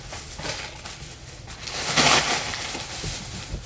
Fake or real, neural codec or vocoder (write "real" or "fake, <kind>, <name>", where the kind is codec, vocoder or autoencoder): real